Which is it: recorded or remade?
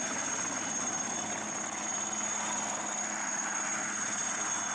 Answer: recorded